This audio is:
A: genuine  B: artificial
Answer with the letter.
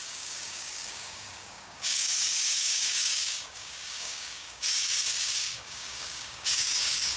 B